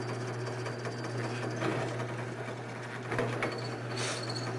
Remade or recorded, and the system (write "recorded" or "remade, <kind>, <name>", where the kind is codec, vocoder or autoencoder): recorded